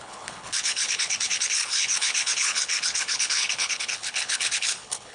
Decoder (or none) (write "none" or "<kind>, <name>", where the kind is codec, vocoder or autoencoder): codec, HILCodec